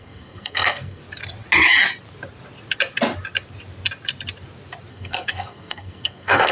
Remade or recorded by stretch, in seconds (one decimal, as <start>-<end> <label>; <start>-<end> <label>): 0.0-1.0 remade; 1.0-4.9 recorded; 4.9-6.5 remade